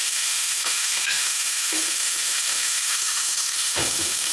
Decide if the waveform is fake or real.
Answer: fake